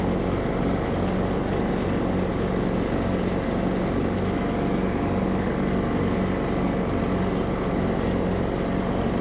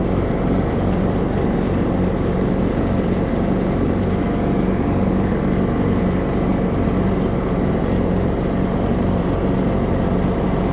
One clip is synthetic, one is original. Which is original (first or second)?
first